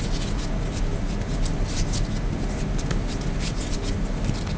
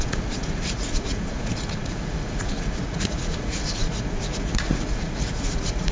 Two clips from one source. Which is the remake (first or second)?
second